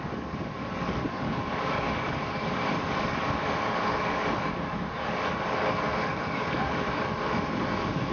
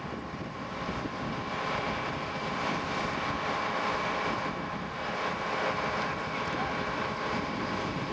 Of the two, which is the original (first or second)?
second